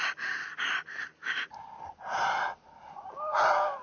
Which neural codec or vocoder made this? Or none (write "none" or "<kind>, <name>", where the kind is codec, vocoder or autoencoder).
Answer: none